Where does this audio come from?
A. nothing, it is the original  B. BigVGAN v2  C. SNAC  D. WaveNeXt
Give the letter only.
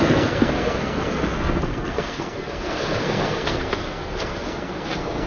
C